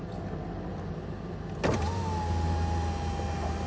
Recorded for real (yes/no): yes